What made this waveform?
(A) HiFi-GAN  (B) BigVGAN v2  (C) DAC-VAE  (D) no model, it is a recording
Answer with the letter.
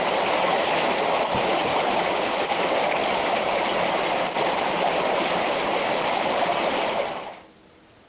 D